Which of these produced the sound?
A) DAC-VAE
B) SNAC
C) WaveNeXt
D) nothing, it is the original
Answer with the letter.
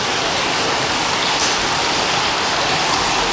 D